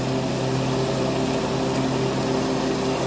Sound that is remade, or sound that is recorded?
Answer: recorded